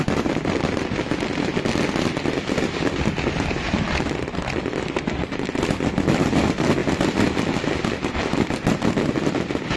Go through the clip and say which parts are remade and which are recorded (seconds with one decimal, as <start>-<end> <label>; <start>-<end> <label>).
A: 0.0-9.8 recorded